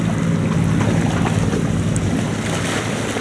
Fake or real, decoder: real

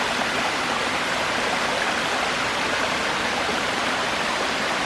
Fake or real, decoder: real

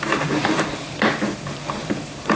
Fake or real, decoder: fake, vocoder, BigVGAN v2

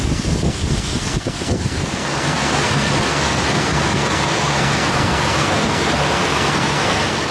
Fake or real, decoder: fake, codec, SNAC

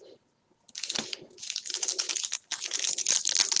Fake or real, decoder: real